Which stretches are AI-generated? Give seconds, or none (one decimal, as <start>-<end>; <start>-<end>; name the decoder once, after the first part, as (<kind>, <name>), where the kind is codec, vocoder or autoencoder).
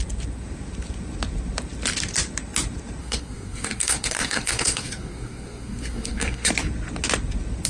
3.0-6.5 (codec, SNAC)